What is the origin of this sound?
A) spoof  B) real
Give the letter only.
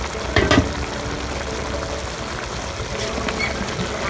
B